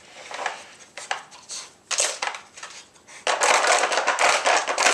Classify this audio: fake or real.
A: real